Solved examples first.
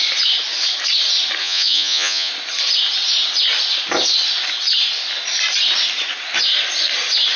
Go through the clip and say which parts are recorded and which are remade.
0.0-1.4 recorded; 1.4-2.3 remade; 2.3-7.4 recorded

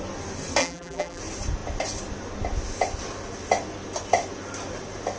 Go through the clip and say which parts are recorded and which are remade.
0.0-0.6 recorded; 0.6-1.2 remade; 1.2-5.2 recorded

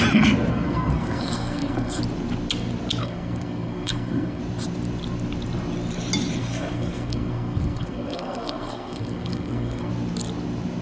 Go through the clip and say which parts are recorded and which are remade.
0.0-0.5 recorded; 0.5-2.0 remade; 2.0-3.0 recorded; 3.0-4.4 remade; 4.4-6.4 recorded; 6.4-9.9 remade; 9.9-10.8 recorded

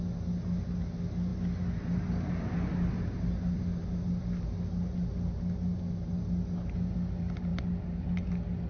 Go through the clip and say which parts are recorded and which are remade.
0.0-8.7 recorded

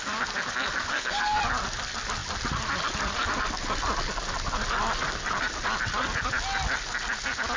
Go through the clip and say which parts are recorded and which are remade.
0.0-0.9 recorded; 0.9-1.4 remade; 1.4-7.6 recorded

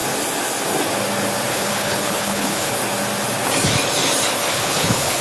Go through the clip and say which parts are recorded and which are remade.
0.0-1.5 recorded; 1.5-2.7 remade; 2.7-4.5 recorded; 4.5-5.2 remade

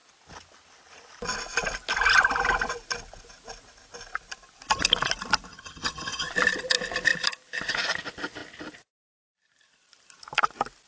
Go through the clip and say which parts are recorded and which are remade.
0.0-5.5 recorded; 5.5-6.3 remade; 6.3-10.9 recorded

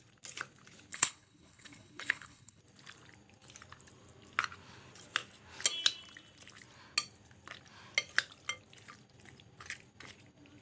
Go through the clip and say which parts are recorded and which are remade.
0.0-0.9 recorded; 0.9-2.6 remade; 2.6-10.6 recorded